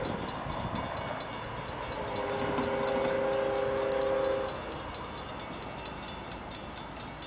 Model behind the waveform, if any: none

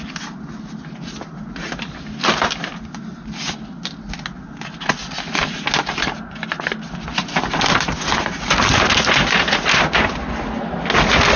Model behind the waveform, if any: none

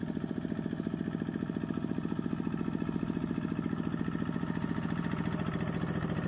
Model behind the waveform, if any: none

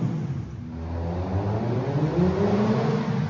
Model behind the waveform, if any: none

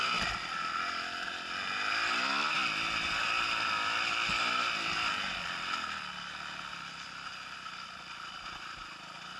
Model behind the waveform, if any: none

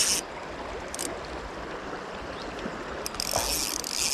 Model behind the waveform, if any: none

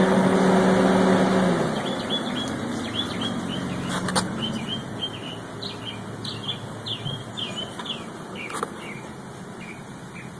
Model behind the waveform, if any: none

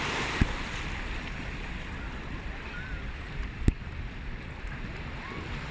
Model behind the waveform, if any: none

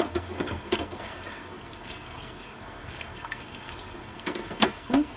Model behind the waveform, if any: codec, SNAC